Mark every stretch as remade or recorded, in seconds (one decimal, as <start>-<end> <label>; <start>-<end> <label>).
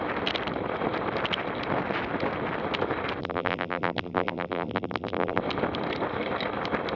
0.0-3.2 recorded; 3.2-5.4 remade; 5.4-7.0 recorded